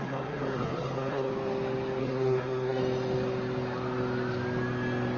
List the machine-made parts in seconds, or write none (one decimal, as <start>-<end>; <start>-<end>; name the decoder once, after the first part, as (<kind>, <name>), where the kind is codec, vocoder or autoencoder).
0.0-1.3 (codec, SNAC); 2.0-2.8